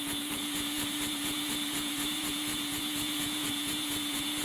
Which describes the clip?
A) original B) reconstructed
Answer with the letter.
B